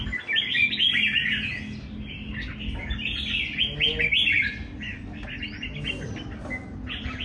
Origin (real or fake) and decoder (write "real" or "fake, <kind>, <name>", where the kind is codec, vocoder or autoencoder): real